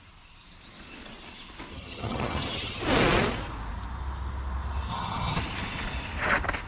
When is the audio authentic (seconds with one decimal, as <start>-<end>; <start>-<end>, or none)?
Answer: 0.0-1.7; 2.8-4.9; 5.4-6.7